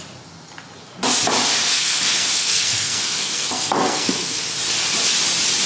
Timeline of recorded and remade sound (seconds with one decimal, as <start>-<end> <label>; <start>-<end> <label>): 0.0-1.6 recorded; 1.6-4.4 remade; 4.4-5.7 recorded